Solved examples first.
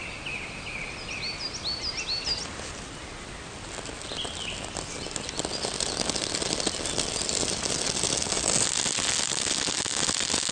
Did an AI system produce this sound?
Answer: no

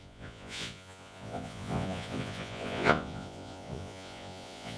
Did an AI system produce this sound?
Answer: yes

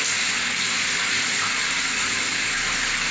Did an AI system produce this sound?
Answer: no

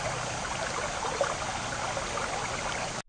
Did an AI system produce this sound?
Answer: no